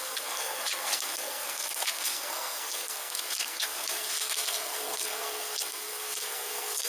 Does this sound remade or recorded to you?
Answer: remade